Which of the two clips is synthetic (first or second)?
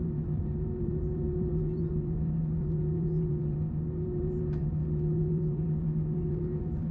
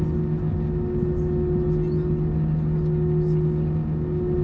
first